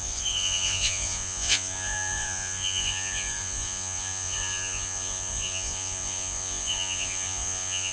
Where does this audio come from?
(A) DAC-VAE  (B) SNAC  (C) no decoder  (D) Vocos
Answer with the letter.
D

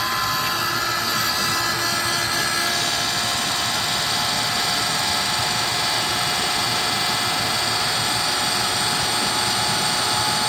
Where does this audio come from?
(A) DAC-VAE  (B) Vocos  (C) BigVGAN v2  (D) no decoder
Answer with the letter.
D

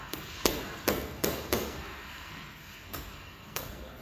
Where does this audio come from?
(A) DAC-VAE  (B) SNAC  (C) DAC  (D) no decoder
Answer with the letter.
B